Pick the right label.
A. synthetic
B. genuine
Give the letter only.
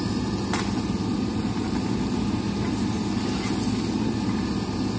B